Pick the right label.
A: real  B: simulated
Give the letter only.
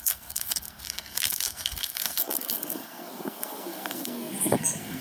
B